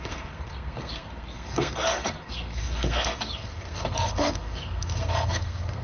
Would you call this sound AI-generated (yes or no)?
yes